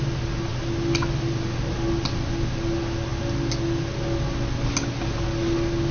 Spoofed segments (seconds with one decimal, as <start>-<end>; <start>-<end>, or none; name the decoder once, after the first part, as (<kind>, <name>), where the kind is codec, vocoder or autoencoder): none